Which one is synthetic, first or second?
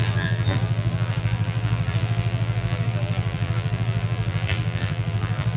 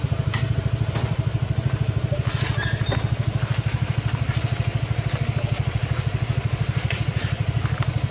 first